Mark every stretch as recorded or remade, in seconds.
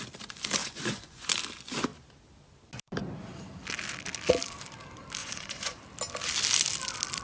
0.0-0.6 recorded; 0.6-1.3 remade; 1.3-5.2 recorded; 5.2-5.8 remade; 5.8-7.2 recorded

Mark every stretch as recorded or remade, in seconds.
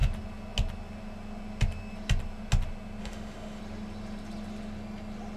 0.0-3.0 recorded; 3.0-3.6 remade; 3.6-5.4 recorded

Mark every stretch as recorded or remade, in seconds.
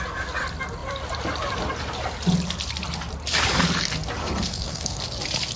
0.0-4.2 recorded; 4.2-5.0 remade; 5.0-5.6 recorded